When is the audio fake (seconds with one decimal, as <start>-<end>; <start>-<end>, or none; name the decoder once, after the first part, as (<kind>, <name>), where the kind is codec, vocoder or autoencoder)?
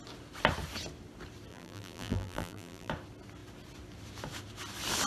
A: 1.5-2.9 (vocoder, BigVGAN v2)